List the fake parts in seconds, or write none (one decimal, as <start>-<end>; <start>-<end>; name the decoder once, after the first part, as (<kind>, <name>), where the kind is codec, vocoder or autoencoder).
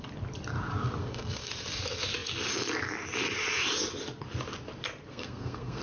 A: 1.0-1.5 (codec, SNAC); 5.1-5.8